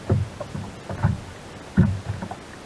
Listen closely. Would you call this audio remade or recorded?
recorded